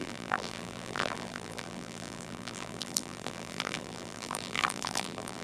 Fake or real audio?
fake